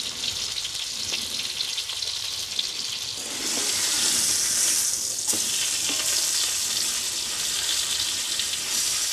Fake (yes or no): no